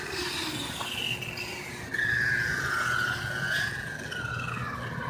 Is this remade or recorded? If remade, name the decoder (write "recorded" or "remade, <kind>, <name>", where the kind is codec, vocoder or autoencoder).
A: recorded